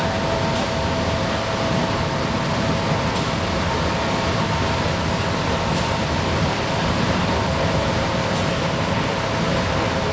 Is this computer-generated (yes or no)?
no